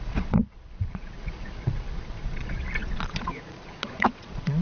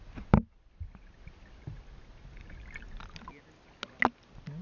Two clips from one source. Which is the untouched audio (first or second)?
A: second